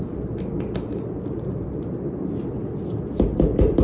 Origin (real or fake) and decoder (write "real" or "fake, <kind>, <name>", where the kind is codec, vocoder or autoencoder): real